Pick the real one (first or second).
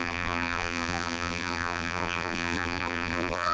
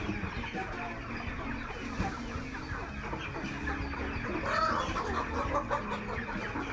second